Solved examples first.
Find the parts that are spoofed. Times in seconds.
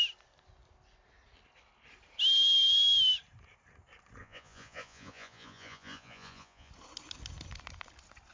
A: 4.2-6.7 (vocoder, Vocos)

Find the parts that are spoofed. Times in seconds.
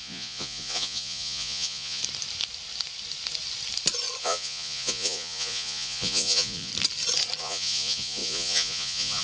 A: 0.0-2.0 (vocoder, Vocos); 4.2-6.7; 7.4-9.2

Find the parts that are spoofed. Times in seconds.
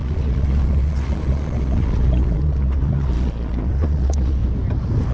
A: 0.0-4.4 (vocoder, Vocos)